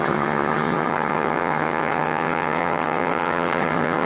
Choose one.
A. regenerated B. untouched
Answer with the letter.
A